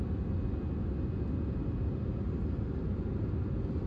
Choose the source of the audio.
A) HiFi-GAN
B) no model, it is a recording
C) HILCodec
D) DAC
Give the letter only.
B